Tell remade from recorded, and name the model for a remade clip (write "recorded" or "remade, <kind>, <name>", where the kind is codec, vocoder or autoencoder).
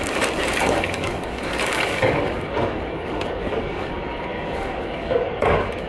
remade, codec, DAC